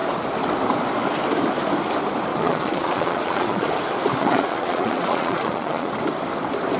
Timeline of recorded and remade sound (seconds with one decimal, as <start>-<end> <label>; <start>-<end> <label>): 0.0-2.3 recorded; 2.3-3.7 remade; 3.7-4.2 recorded; 4.2-5.9 remade; 5.9-6.8 recorded